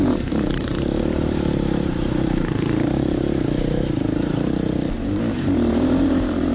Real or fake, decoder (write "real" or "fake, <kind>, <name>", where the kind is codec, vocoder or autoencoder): fake, vocoder, BigVGAN v2